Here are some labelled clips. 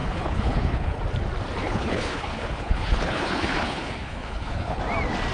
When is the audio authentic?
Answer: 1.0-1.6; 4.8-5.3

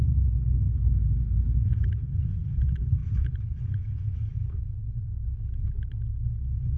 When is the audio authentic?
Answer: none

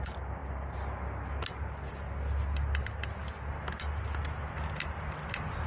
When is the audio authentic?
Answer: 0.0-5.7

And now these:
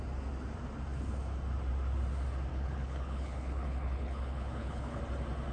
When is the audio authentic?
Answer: 0.0-2.5; 5.0-5.5

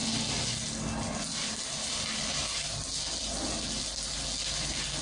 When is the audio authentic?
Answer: 0.0-5.0